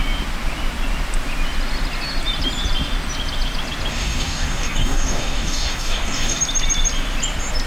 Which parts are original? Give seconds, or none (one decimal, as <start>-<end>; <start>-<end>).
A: 0.0-3.9; 6.4-7.7